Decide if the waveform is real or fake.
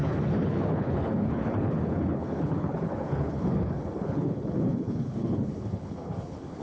fake